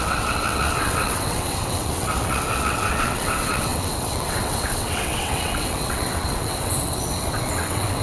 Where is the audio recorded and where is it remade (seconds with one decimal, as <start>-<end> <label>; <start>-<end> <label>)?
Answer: 0.0-8.0 remade